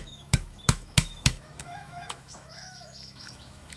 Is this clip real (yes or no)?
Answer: no